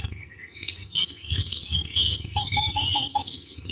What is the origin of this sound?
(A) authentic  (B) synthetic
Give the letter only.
B